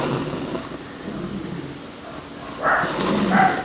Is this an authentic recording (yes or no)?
yes